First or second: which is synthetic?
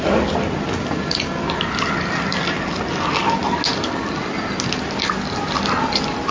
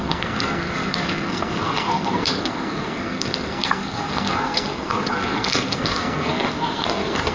second